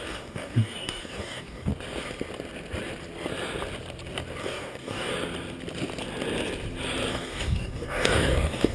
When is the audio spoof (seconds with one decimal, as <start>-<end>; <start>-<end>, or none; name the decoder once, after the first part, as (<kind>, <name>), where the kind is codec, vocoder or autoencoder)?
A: 0.0-1.7 (codec, DAC); 4.4-5.1; 7.1-8.7